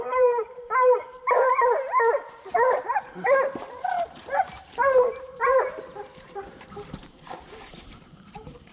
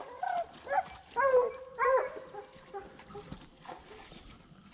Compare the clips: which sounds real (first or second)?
second